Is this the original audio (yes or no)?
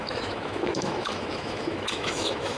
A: no